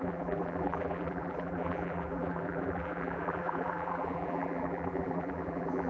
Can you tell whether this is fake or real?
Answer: fake